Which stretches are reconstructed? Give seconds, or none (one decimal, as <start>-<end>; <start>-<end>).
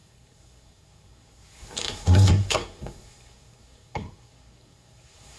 0.0-5.4